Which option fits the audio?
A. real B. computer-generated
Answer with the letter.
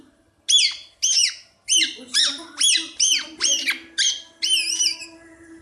A